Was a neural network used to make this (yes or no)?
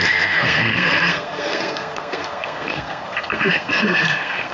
yes